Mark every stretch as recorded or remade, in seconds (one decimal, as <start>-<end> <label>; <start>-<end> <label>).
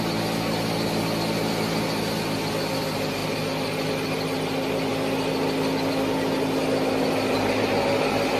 0.0-8.4 recorded